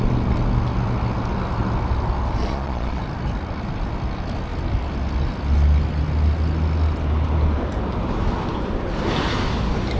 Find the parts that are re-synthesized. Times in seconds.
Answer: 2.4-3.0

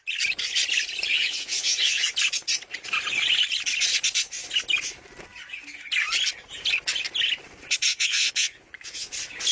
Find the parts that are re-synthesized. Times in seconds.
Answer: 1.1-2.1; 7.9-9.1

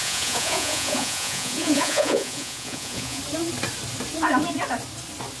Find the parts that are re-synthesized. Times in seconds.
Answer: 0.0-3.2

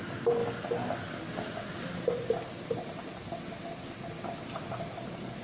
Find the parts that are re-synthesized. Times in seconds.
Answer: none

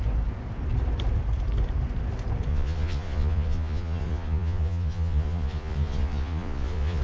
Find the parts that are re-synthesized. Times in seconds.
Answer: 2.5-7.0